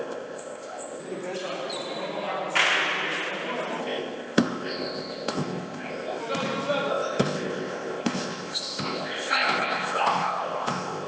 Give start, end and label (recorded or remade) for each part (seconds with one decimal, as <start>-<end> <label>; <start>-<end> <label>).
0.0-1.0 remade; 1.0-3.8 recorded; 3.8-6.2 remade; 6.2-6.9 recorded; 6.9-11.1 remade